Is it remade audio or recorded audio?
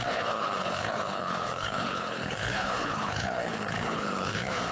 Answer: remade